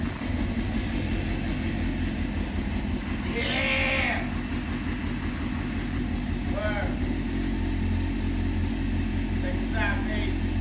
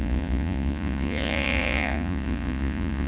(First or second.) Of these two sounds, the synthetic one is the second